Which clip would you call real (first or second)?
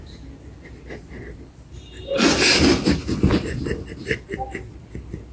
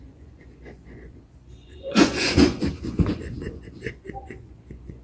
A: first